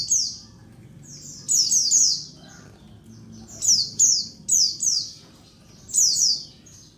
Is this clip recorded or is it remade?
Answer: recorded